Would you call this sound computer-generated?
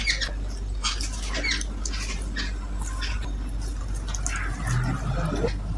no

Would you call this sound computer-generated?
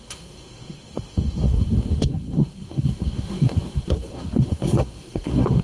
yes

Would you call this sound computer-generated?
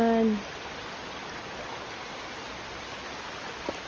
no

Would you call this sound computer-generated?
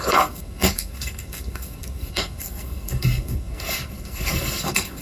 yes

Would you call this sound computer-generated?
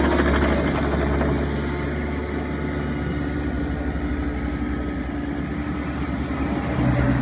no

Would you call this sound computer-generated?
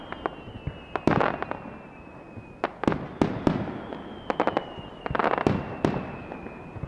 no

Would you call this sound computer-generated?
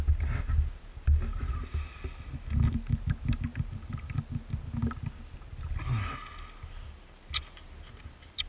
no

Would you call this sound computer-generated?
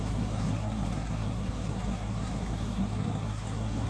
yes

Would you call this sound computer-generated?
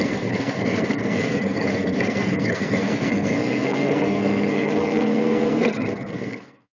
yes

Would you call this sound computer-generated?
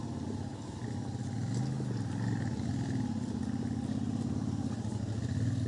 no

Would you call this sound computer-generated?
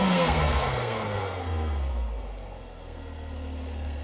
yes